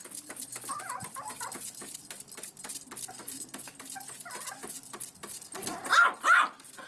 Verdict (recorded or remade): recorded